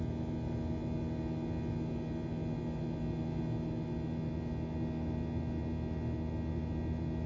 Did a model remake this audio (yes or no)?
no